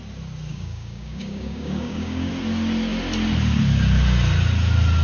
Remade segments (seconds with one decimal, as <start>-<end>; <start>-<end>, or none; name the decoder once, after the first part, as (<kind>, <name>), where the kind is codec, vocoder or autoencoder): 0.5-2.3 (codec, DAC)